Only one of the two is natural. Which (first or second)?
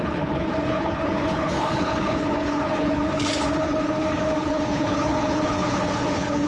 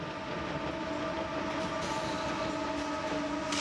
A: second